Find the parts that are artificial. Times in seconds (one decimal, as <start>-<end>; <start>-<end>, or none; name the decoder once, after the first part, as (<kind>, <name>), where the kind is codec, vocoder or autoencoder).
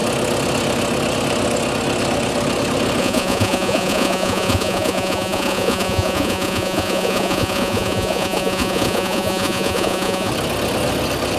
3.0-10.3 (vocoder, Vocos)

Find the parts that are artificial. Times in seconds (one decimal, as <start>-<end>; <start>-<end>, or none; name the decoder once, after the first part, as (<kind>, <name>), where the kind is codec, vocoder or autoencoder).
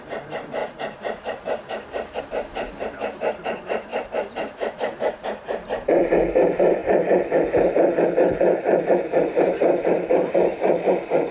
0.0-6.8 (vocoder, BigVGAN v2); 8.1-11.3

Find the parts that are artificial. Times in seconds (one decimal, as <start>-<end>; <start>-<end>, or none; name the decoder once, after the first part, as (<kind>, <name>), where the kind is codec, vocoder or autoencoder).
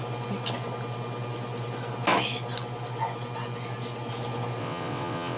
4.6-5.4 (vocoder, WaveNeXt)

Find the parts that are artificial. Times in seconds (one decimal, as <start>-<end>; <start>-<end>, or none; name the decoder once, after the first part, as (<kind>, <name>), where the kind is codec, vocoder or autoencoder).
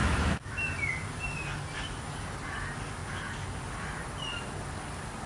0.0-0.7 (autoencoder, DAC-VAE)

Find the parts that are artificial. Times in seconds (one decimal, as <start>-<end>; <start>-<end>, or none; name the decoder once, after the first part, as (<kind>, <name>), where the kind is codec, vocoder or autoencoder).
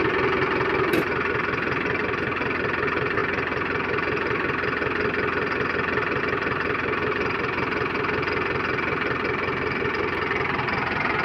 none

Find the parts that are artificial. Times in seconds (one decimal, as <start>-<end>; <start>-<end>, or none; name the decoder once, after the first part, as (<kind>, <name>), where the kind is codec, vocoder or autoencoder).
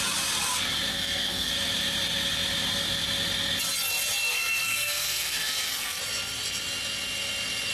0.9-1.5 (codec, SNAC); 4.3-6.0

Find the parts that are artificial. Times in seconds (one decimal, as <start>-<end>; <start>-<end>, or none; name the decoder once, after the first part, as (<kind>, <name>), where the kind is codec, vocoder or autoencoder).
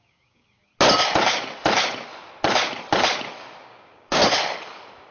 0.0-0.7 (codec, DAC); 3.6-4.2